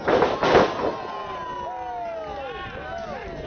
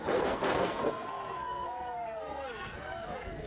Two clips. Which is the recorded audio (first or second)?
first